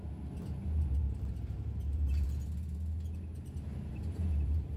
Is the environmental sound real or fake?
fake